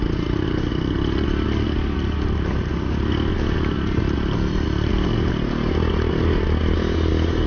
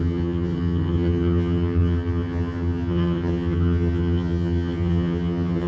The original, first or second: first